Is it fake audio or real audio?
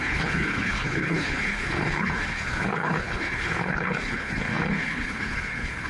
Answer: fake